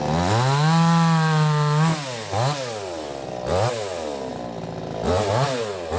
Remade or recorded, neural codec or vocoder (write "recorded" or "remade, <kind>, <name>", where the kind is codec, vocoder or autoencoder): recorded